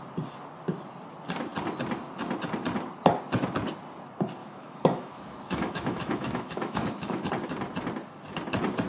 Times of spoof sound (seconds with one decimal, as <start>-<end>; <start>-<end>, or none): 4.4-7.3

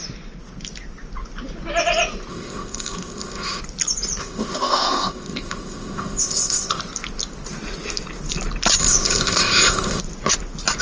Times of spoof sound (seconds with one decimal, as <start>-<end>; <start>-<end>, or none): 2.3-3.6; 4.2-6.8; 8.8-10.0

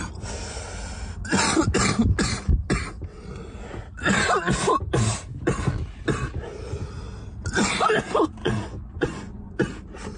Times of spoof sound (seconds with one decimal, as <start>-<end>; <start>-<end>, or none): 8.4-9.5

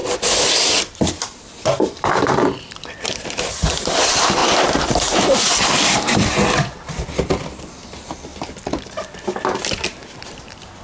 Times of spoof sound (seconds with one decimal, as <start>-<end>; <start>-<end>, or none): 0.0-4.4; 5.2-8.3; 9.8-10.8

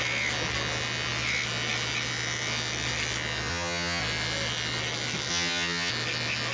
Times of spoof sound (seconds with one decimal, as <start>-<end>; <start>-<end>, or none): 3.5-4.0; 5.3-5.9

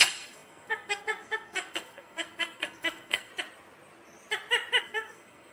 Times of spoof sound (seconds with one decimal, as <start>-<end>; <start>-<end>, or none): 0.0-3.3; 4.8-5.5

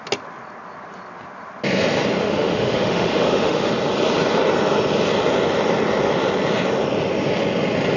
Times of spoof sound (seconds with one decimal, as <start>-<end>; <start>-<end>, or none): 2.2-3.7